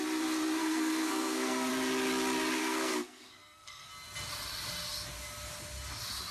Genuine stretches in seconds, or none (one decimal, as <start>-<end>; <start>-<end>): 0.0-0.6; 1.7-2.6; 3.9-6.3